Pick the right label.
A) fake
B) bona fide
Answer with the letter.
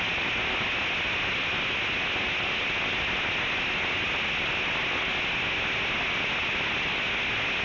B